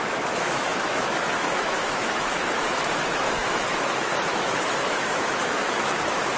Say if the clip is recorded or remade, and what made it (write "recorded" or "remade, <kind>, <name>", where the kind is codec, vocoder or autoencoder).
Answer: remade, autoencoder, DAC-VAE